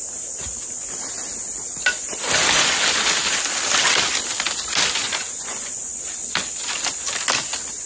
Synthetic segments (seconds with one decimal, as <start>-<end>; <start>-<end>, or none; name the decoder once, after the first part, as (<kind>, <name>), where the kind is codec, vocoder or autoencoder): 5.0-6.1 (vocoder, Vocos)